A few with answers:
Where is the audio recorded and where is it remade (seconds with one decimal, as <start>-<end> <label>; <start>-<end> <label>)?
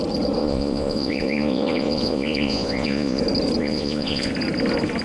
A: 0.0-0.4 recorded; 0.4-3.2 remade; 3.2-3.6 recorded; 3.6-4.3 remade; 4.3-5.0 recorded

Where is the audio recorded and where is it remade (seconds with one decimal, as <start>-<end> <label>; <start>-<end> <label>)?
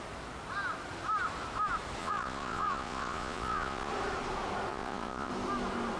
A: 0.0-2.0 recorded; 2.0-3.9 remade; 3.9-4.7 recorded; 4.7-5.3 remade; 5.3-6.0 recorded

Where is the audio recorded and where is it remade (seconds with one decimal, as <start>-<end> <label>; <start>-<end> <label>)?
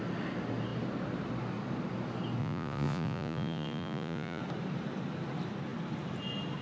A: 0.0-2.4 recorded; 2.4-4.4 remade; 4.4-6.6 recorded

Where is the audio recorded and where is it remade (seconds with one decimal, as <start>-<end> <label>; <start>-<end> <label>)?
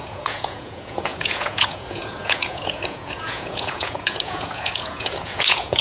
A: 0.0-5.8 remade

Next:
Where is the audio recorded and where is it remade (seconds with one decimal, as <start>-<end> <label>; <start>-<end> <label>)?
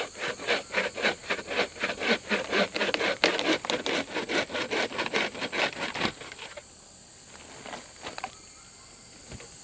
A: 0.0-9.6 recorded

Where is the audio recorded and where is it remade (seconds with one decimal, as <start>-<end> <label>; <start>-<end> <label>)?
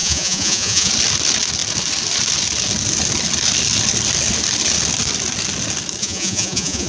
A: 0.0-0.9 remade; 0.9-6.0 recorded; 6.0-6.9 remade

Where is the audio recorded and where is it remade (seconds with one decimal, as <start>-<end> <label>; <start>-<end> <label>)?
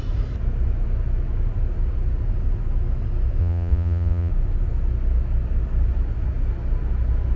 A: 0.0-3.4 recorded; 3.4-4.3 remade; 4.3-7.4 recorded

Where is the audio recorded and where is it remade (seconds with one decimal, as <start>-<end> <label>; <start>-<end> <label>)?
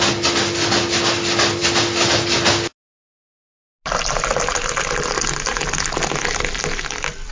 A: 0.0-7.3 recorded